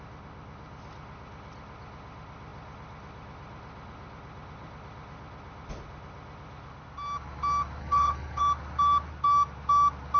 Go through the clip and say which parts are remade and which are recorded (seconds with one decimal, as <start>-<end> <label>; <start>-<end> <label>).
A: 0.0-7.8 recorded; 7.8-8.4 remade; 8.4-10.2 recorded